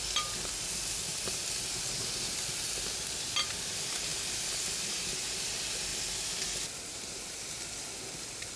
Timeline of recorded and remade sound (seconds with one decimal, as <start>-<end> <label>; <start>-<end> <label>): 0.0-8.6 recorded

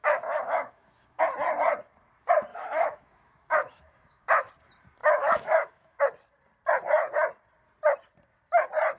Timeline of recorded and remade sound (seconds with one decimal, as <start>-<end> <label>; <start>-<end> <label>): 0.0-1.2 remade; 1.2-2.5 recorded; 2.5-4.5 remade; 4.5-5.0 recorded; 5.0-6.0 remade; 6.0-9.0 recorded

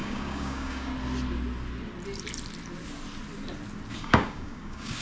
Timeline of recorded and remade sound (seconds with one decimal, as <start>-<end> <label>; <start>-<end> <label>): 0.0-0.9 remade; 0.9-3.9 recorded; 3.9-5.0 remade

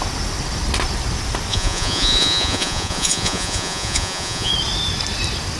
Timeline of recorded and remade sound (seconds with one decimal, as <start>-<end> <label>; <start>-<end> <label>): 0.0-1.5 recorded; 1.5-4.5 remade; 4.5-5.6 recorded

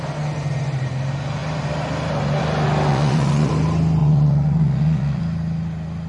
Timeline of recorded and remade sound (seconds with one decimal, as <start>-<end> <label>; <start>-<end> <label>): 0.0-2.9 recorded; 2.9-3.5 remade; 3.5-4.0 recorded; 4.0-5.2 remade; 5.2-6.1 recorded

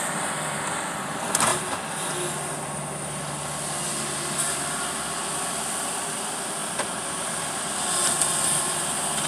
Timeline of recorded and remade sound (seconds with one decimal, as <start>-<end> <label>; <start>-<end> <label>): 0.0-1.5 remade; 1.5-4.6 recorded; 4.6-9.3 remade

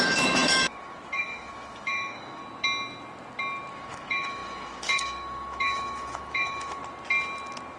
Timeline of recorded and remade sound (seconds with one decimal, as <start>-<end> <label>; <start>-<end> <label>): 0.0-2.4 remade; 2.4-3.7 recorded; 3.7-6.8 remade; 6.8-7.8 recorded